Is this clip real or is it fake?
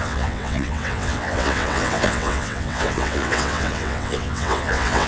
fake